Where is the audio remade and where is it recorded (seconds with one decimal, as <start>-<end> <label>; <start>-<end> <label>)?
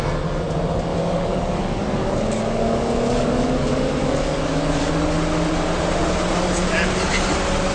0.0-0.9 recorded; 0.9-4.9 remade; 4.9-7.7 recorded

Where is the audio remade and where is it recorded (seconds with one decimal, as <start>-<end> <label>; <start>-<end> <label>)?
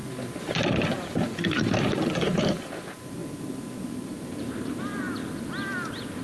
0.0-0.7 recorded; 0.7-3.2 remade; 3.2-4.0 recorded; 4.0-5.2 remade; 5.2-6.2 recorded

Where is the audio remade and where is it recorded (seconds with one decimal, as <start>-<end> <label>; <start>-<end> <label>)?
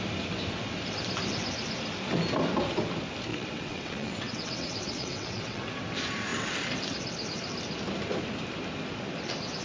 0.0-3.3 recorded; 3.3-5.6 remade; 5.6-9.6 recorded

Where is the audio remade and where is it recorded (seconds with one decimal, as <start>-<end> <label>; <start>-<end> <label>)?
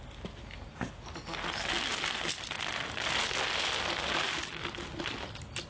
0.0-5.7 recorded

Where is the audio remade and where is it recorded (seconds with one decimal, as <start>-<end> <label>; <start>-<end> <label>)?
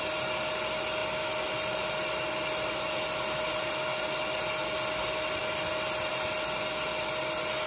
0.0-7.7 recorded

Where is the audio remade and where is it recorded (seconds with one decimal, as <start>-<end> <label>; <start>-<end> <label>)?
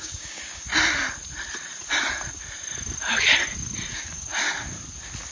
0.0-0.7 remade; 0.7-3.9 recorded; 3.9-4.3 remade; 4.3-5.3 recorded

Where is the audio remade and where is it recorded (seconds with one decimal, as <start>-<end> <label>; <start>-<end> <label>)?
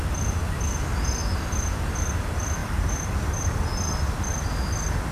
0.0-2.6 recorded; 2.6-3.4 remade; 3.4-5.1 recorded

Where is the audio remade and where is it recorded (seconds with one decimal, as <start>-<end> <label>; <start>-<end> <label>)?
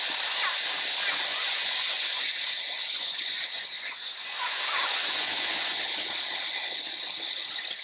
0.0-1.3 recorded; 1.3-5.8 remade; 5.8-7.8 recorded